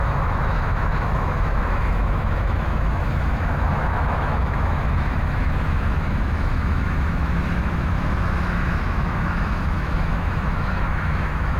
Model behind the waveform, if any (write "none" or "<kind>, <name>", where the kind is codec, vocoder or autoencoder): autoencoder, DAC-VAE